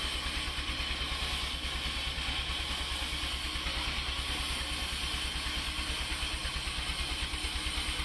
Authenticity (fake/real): real